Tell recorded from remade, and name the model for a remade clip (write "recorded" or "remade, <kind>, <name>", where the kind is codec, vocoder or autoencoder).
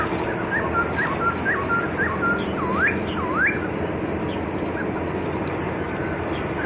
recorded